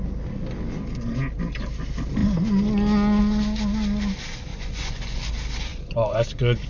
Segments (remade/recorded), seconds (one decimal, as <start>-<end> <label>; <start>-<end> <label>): 0.0-4.5 recorded; 4.5-5.3 remade; 5.3-5.7 recorded; 5.7-6.7 remade